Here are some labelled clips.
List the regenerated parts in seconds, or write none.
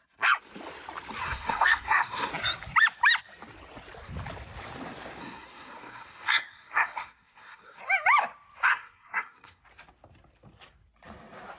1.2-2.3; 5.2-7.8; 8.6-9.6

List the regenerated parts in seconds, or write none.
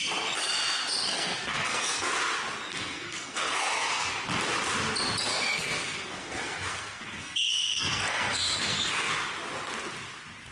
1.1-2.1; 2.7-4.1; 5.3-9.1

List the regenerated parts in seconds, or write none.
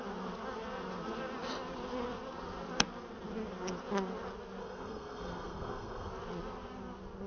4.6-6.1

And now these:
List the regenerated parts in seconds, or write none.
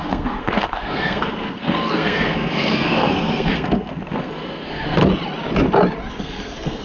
0.0-5.0; 6.1-6.8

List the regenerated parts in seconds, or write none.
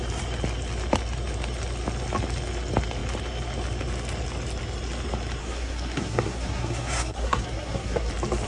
5.4-8.1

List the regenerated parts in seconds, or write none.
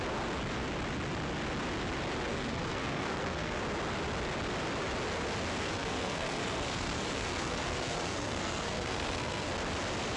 2.3-3.6; 5.6-9.5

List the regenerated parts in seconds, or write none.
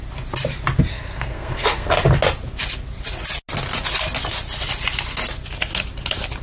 0.9-1.9